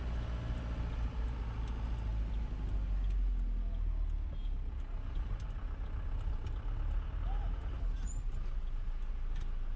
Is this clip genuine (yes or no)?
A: yes